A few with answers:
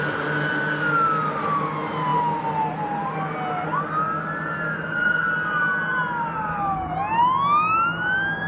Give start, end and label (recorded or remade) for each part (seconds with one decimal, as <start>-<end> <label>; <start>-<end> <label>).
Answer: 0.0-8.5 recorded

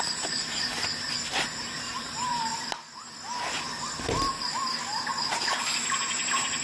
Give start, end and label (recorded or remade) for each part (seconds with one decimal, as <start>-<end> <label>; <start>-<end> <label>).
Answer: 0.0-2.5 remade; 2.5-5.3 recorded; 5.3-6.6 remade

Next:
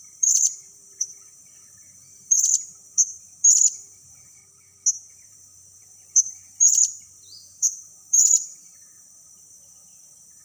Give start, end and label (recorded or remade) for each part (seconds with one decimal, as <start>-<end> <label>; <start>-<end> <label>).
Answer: 0.0-4.4 remade; 4.4-5.1 recorded; 5.1-10.4 remade

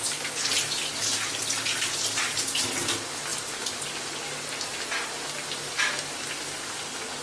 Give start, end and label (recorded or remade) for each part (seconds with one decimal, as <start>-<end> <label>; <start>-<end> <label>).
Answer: 0.0-7.2 recorded

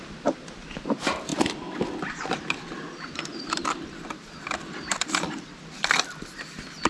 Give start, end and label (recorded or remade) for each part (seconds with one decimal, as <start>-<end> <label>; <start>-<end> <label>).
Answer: 0.0-6.9 remade

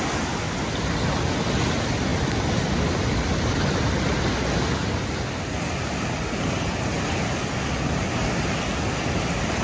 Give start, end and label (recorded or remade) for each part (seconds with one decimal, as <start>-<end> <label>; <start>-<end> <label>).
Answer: 0.0-9.6 recorded

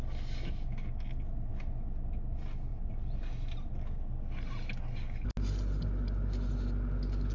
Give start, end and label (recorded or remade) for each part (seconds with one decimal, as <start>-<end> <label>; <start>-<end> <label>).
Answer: 0.0-2.7 recorded; 2.7-3.7 remade; 3.7-7.3 recorded